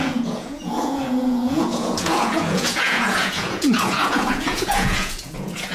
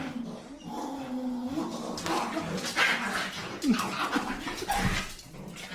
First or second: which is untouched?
second